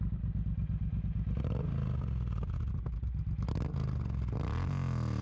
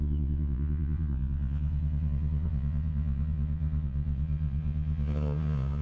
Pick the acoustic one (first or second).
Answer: first